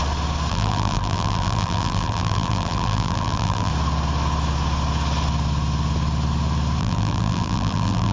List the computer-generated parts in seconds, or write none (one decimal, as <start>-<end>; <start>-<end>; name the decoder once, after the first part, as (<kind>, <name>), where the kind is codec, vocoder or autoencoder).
0.5-3.7 (vocoder, BigVGAN v2); 6.8-8.1

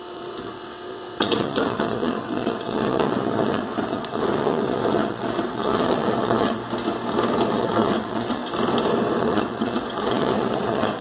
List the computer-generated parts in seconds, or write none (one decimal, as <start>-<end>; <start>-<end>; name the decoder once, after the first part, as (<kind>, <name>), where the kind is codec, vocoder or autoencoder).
0.0-6.6 (vocoder, WaveNeXt); 7.5-8.4; 9.2-11.0

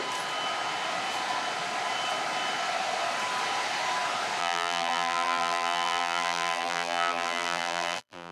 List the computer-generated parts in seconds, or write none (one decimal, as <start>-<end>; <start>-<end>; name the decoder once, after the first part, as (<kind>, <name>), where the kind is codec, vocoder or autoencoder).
4.4-8.3 (vocoder, BigVGAN v2)

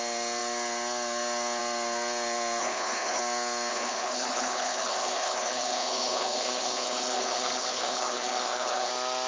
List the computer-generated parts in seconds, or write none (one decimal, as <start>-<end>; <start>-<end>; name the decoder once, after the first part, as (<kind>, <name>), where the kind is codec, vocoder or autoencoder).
2.6-3.2 (codec, HILCodec); 3.7-8.9

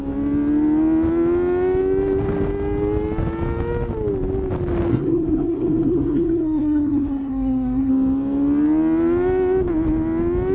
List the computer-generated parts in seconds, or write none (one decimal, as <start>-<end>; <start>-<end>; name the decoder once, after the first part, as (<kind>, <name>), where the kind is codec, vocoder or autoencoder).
4.9-7.9 (codec, SNAC)

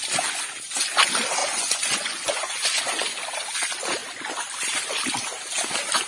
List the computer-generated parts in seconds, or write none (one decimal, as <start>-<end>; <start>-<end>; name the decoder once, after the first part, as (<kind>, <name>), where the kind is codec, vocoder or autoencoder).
1.4-2.8 (vocoder, Vocos)

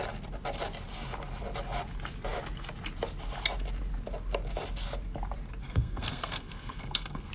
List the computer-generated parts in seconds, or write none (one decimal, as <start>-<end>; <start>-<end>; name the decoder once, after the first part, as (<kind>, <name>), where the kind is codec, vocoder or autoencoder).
5.6-7.3 (codec, SNAC)